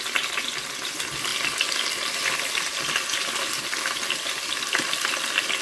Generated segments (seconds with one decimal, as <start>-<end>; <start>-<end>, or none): none